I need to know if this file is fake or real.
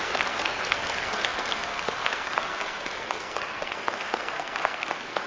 fake